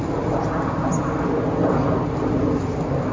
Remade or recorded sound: recorded